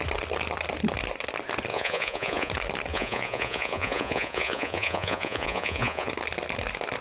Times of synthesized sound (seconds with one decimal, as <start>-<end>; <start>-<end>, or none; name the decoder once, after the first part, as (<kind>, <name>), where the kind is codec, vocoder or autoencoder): 1.7-2.5 (vocoder, Vocos); 2.9-6.1